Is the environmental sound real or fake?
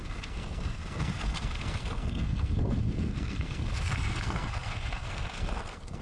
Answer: fake